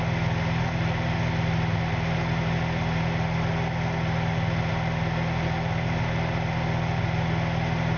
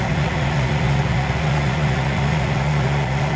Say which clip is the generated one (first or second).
second